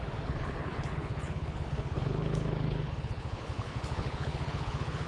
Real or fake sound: fake